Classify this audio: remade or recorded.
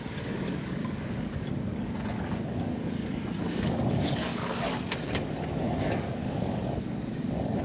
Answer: remade